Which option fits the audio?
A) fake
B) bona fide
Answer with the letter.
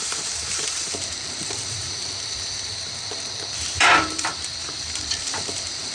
A